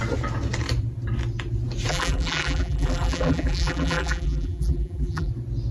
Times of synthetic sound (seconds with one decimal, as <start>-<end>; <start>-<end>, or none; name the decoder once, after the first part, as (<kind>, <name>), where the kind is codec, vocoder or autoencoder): 1.9-5.3 (vocoder, BigVGAN v2)